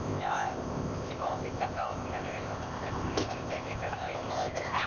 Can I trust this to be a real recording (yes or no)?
no